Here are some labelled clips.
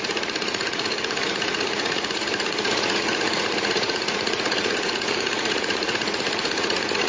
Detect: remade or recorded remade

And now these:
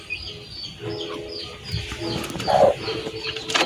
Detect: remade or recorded recorded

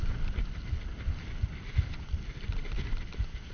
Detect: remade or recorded recorded